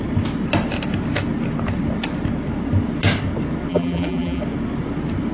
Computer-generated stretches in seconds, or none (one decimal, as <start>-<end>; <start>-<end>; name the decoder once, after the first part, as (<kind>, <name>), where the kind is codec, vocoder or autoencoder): 3.7-4.4 (vocoder, BigVGAN v2)